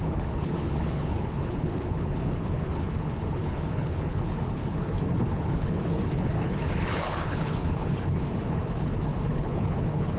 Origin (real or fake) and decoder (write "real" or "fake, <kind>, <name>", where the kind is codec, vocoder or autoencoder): fake, codec, HILCodec